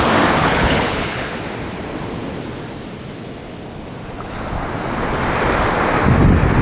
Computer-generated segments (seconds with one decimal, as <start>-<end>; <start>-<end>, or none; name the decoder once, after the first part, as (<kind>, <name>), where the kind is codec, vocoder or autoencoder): 0.4-1.3 (codec, HILCodec)